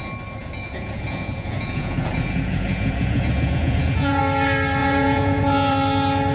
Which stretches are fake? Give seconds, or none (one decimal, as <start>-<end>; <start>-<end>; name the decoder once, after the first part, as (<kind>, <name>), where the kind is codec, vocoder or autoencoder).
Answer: 0.4-4.2 (vocoder, Vocos); 4.8-5.7